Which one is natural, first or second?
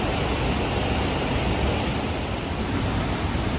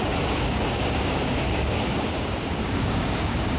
first